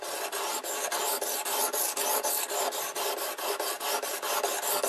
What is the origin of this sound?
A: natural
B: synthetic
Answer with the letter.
A